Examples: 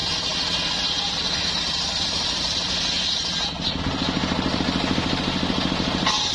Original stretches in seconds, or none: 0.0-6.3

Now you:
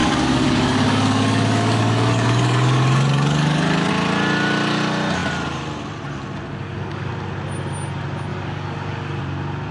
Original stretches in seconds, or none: 3.9-6.5; 7.1-8.3; 9.2-9.7

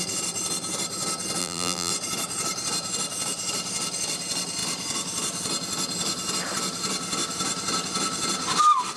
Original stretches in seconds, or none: 0.0-1.4; 1.9-9.0

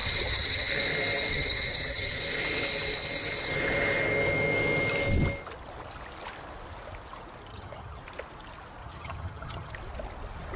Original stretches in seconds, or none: 0.7-1.3; 2.2-7.5; 8.0-8.8; 9.7-10.6

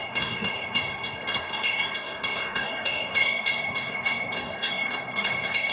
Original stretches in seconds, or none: none

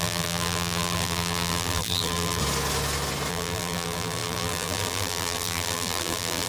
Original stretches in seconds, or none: 2.4-3.3

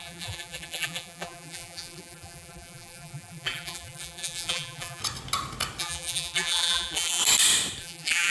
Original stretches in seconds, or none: 5.0-5.8; 7.2-7.8